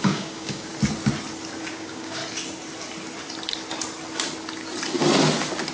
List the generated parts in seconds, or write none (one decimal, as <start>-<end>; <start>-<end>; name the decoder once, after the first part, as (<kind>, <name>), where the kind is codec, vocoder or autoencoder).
0.0-0.7 (codec, DAC); 1.7-2.2